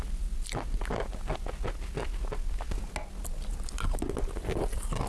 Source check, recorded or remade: recorded